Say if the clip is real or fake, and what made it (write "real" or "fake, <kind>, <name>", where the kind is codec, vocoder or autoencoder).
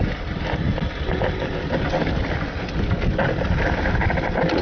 real